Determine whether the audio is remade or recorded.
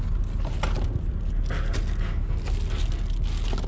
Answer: recorded